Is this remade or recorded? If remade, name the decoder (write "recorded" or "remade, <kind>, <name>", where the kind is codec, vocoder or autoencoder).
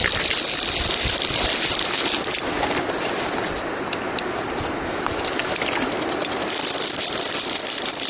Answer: recorded